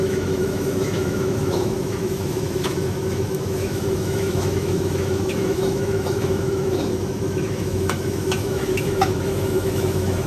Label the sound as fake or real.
fake